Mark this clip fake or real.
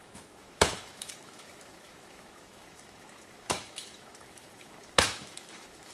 fake